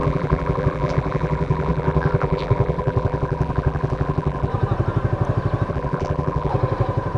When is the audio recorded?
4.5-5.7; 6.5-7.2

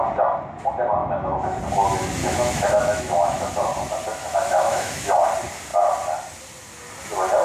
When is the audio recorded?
0.0-1.0; 1.6-2.2; 3.5-4.2; 5.1-7.4

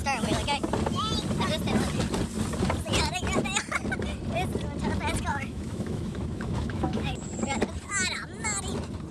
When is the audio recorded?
0.0-5.3; 7.3-9.1

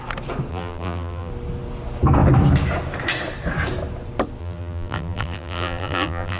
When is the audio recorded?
0.0-0.5; 1.3-4.4

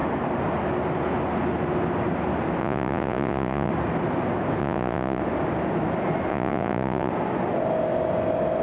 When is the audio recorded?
0.0-2.6; 3.7-4.6; 5.2-6.3; 7.1-8.6

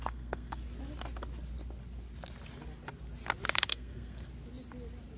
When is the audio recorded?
0.6-3.7; 4.3-5.2

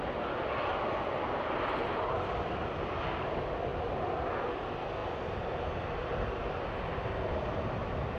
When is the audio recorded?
0.0-8.2